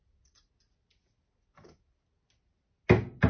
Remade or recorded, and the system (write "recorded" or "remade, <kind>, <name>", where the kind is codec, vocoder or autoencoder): recorded